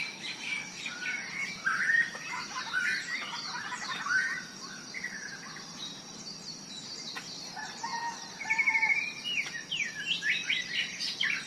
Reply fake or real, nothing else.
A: fake